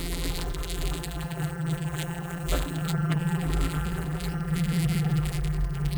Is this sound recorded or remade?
remade